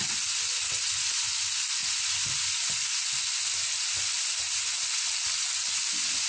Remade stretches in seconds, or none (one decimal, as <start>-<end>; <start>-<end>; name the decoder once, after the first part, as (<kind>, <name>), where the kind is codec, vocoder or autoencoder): none